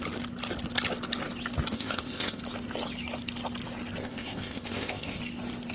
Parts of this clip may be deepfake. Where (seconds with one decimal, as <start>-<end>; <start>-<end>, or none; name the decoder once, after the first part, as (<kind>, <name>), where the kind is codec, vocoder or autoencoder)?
1.7-2.4 (codec, ZipCodec); 4.0-5.2